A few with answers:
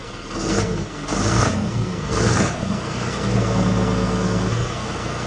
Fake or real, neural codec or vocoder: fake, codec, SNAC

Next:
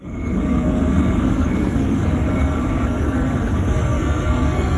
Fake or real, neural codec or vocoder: fake, codec, SNAC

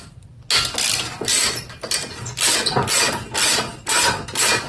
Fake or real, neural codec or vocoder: real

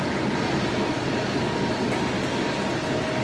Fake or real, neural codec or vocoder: real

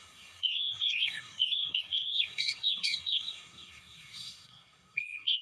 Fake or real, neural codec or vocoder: fake, codec, SNAC